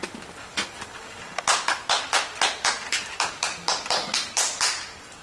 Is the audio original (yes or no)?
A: yes